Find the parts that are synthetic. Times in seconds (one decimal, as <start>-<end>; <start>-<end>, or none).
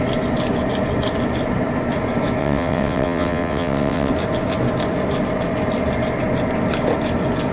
2.4-4.1